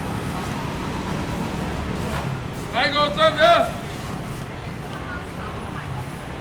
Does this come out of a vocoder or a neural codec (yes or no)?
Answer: yes